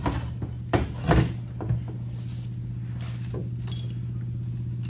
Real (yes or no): yes